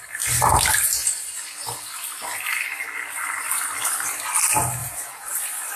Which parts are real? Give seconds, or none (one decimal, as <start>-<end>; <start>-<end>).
0.0-4.8; 5.3-5.8